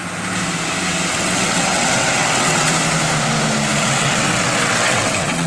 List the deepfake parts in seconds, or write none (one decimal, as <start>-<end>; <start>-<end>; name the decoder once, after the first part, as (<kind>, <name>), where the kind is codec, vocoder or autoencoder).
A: 1.1-2.7 (vocoder, WaveNeXt); 3.8-5.5